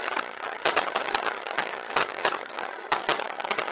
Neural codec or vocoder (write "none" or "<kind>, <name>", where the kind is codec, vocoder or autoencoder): vocoder, HiFi-GAN